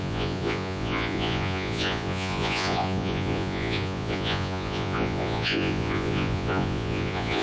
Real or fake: fake